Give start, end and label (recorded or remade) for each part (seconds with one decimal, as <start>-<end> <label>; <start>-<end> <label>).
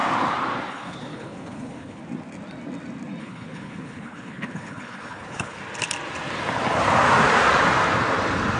0.0-0.7 recorded; 0.7-2.0 remade; 2.0-3.2 recorded; 3.2-5.6 remade; 5.6-8.6 recorded